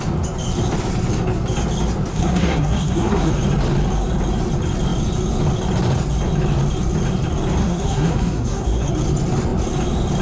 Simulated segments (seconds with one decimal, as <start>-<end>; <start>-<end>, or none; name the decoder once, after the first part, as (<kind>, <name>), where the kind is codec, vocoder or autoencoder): 2.1-3.3 (codec, SNAC); 7.6-8.9

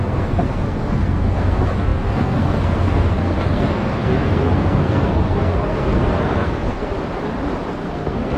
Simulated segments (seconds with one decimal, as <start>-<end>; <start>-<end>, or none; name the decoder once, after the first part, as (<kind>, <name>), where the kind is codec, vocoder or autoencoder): 0.0-6.9 (codec, SNAC); 7.7-8.4

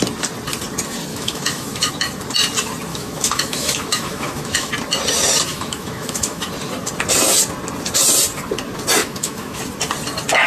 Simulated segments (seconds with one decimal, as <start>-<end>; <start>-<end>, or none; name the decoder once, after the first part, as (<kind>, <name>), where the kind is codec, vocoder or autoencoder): 1.1-1.9 (autoencoder, DAC-VAE); 2.9-4.7; 5.5-6.5; 9.0-9.6

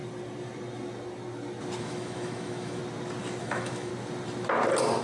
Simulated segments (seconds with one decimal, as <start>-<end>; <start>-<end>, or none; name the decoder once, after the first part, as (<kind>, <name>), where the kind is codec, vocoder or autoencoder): 1.8-2.8 (autoencoder, DAC-VAE); 3.4-3.9

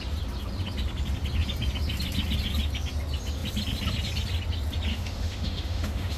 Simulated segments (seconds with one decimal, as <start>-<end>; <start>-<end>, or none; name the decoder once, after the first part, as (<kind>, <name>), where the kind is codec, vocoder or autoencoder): 4.9-6.2 (autoencoder, DAC-VAE)

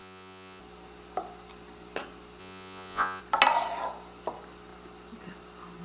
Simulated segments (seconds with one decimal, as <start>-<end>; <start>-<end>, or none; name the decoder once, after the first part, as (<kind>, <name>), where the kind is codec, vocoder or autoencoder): 0.0-0.6 (vocoder, Vocos); 2.4-3.2